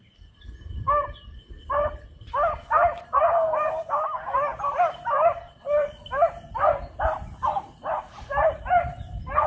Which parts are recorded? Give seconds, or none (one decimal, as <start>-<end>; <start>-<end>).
0.0-9.5